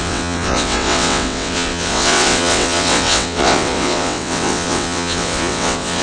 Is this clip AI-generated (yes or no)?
yes